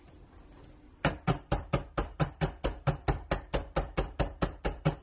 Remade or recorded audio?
recorded